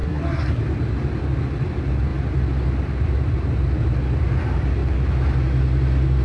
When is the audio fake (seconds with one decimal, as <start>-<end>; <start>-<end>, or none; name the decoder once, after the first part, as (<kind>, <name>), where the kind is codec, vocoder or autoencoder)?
0.0-0.6 (codec, SNAC)